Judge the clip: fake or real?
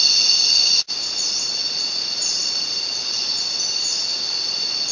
real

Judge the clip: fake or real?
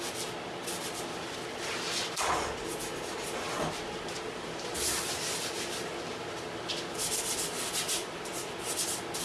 real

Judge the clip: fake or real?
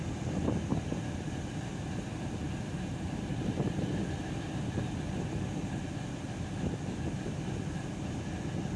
real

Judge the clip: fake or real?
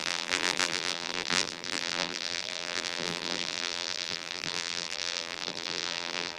fake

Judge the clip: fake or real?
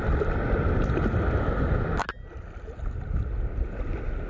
real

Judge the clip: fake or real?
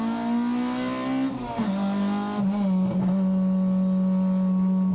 real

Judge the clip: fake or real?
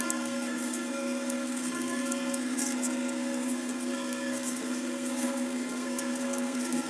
fake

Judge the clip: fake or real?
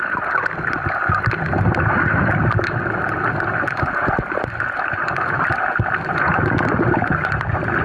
real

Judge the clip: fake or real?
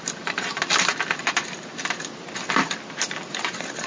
real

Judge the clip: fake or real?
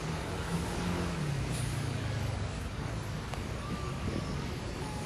fake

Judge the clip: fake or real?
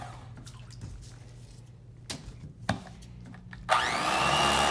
real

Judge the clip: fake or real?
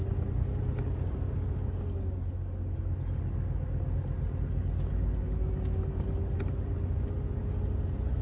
real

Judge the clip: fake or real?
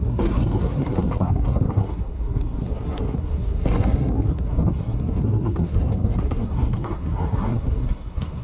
fake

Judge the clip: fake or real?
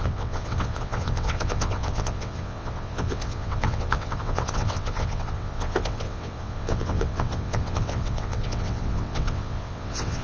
fake